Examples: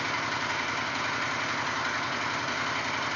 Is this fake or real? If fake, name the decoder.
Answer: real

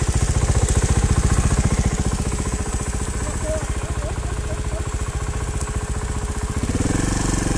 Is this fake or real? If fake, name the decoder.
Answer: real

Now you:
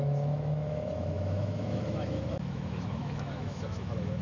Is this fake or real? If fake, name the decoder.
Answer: fake, autoencoder, DAC-VAE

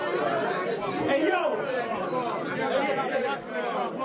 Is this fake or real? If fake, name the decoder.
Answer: real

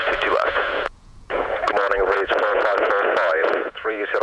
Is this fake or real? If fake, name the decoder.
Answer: fake, vocoder, Vocos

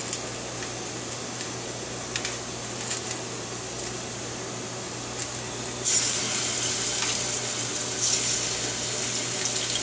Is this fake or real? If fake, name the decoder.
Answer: real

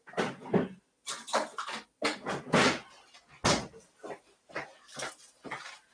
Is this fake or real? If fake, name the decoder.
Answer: real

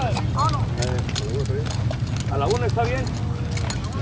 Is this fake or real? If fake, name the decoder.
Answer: real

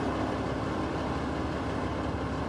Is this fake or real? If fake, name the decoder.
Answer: fake, vocoder, BigVGAN v2